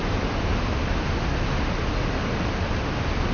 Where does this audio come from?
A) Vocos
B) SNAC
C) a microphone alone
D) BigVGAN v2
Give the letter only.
C